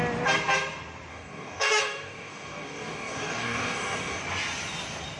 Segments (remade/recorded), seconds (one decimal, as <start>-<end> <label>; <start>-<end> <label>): 0.0-1.1 recorded; 1.1-4.2 remade; 4.2-5.2 recorded